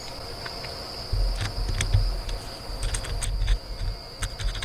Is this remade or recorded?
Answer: recorded